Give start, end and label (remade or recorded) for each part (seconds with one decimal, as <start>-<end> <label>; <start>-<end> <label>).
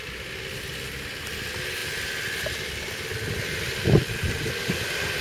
0.0-5.2 recorded